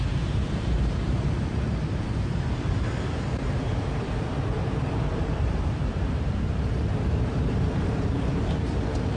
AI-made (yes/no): yes